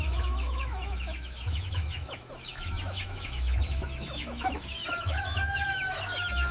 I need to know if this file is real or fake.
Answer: fake